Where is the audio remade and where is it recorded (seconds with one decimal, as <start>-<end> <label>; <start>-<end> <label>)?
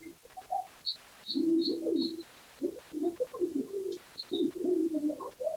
0.0-1.5 recorded; 1.5-4.3 remade; 4.3-4.8 recorded; 4.8-5.6 remade